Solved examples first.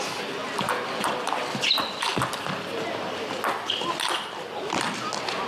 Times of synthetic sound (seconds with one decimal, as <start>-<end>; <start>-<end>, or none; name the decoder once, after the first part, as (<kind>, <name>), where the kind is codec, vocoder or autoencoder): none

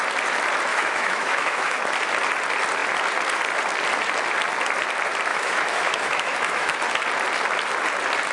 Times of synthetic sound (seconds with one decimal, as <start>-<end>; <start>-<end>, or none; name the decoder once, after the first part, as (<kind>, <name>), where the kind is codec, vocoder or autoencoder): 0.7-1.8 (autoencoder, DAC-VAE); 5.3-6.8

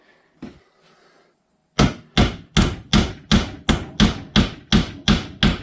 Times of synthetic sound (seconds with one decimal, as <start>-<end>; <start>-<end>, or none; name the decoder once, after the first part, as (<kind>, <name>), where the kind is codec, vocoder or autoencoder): none

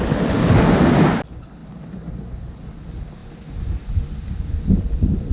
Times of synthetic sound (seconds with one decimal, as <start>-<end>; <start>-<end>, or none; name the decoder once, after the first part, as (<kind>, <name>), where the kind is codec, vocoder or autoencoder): none

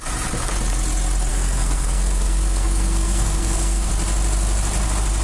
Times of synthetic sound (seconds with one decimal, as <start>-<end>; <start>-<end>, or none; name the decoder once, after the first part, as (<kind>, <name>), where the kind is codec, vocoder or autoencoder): 1.3-3.9 (codec, SNAC)

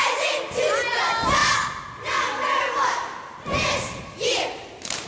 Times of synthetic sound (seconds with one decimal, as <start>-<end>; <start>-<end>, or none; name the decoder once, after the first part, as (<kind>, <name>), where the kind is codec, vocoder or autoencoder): none

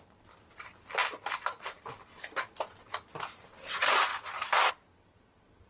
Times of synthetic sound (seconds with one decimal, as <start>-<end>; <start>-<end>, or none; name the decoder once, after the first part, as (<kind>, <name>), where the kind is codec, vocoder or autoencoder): none